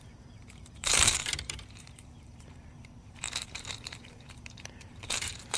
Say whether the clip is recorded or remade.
remade